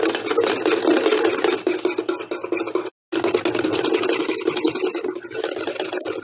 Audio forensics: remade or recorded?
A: recorded